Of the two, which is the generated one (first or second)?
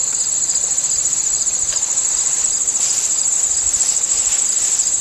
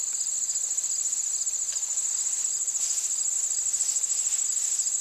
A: first